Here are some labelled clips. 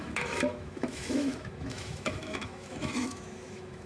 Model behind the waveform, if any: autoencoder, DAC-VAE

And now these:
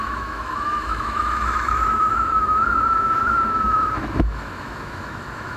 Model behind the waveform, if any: autoencoder, DAC-VAE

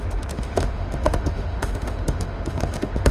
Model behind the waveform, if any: autoencoder, DAC-VAE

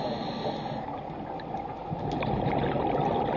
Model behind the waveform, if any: none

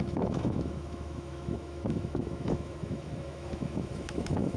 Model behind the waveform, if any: autoencoder, DAC-VAE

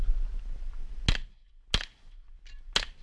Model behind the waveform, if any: none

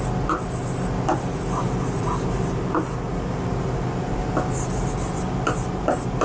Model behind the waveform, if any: none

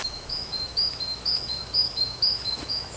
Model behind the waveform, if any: autoencoder, DAC-VAE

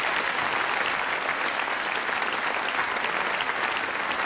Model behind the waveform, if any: none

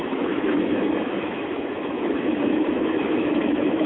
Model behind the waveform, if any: autoencoder, DAC-VAE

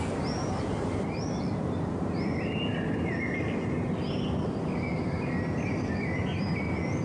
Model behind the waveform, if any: none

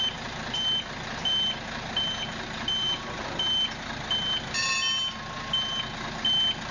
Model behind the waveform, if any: none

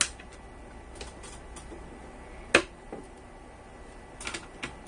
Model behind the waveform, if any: none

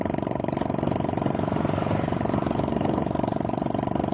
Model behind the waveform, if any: none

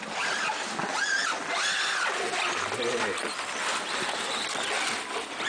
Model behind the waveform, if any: none